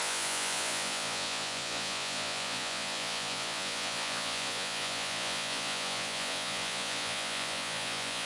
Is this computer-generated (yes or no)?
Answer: yes